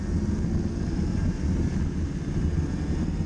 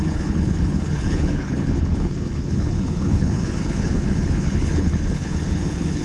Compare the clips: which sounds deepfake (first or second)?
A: second